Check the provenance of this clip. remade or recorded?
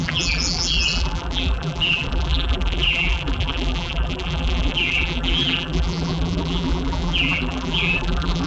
remade